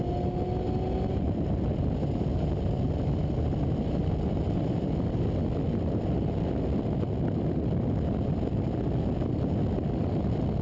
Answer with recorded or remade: recorded